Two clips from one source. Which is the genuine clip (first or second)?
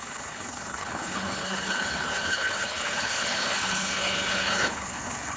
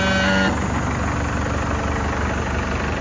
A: second